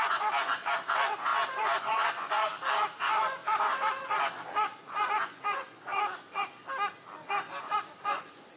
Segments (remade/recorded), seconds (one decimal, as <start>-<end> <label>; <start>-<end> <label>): 0.0-2.4 remade; 2.4-3.0 recorded; 3.0-6.6 remade; 6.6-7.6 recorded; 7.6-8.6 remade